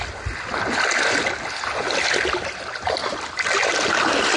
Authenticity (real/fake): real